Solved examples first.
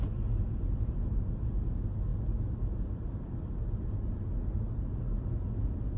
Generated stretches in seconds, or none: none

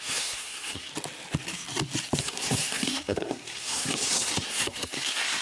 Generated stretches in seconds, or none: 0.0-0.9 (codec, SNAC); 2.2-5.4

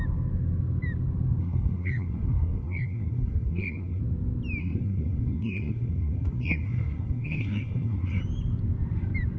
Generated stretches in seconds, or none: 1.4-4.0 (codec, SNAC); 4.6-8.2

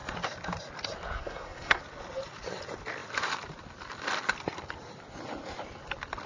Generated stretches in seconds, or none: 1.2-1.8 (codec, SNAC)